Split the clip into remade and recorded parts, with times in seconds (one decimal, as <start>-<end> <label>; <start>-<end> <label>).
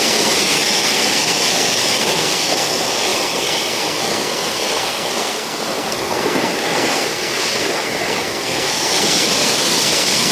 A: 0.0-10.3 remade